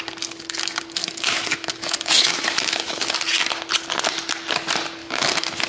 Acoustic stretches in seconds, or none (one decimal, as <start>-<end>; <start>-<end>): 0.0-1.0; 3.2-5.0